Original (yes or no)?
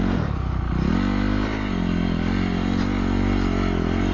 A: yes